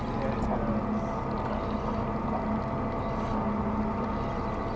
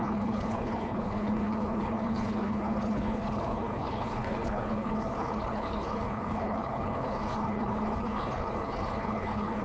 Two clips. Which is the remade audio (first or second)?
second